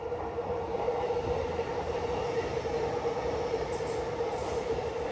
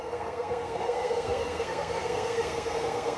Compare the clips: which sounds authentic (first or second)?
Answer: first